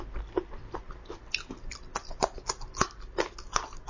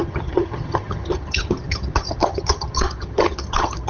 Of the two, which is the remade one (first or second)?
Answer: second